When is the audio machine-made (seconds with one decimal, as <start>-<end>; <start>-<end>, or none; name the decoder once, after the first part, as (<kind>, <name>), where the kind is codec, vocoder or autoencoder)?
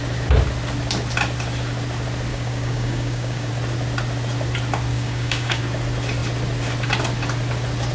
2.3-3.5 (codec, DAC); 4.9-5.6